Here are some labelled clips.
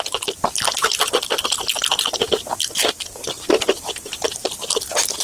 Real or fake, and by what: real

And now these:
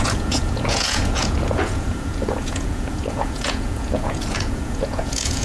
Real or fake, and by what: fake, vocoder, Vocos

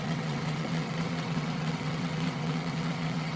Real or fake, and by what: fake, vocoder, WaveNeXt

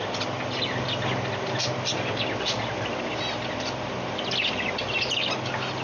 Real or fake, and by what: real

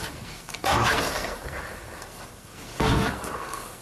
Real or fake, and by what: fake, codec, SNAC